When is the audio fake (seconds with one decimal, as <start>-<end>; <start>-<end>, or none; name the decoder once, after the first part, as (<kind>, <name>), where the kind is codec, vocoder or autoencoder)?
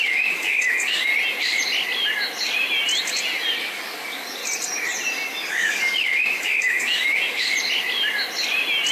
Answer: 0.0-1.1 (codec, DAC); 3.6-4.4; 5.5-7.5